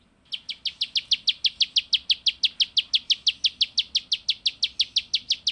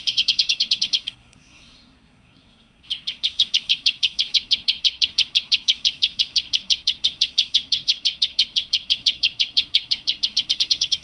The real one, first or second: first